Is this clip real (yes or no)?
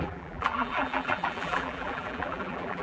no